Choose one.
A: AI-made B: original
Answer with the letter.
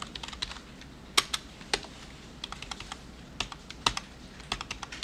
B